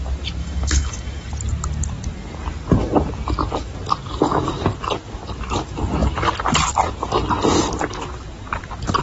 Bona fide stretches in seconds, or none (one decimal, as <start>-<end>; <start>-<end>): 0.0-0.4; 1.3-9.0